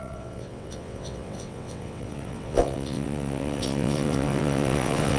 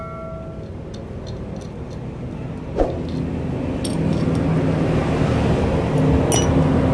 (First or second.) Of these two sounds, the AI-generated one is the first